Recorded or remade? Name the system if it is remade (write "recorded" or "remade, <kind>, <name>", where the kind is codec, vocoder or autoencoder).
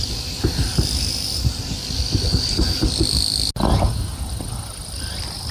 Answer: recorded